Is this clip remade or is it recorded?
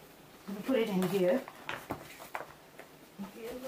recorded